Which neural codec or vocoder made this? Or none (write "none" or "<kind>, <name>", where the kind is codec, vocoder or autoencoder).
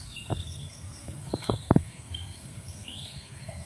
codec, SNAC